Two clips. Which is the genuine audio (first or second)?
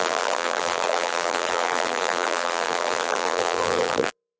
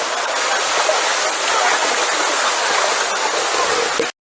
second